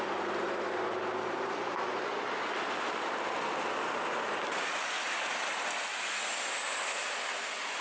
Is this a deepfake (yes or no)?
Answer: no